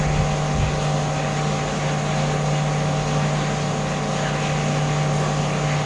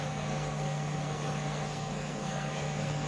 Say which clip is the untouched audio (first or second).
first